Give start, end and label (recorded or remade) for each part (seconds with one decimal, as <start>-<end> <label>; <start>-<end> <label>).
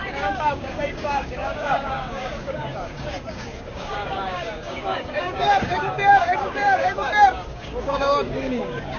0.0-9.0 remade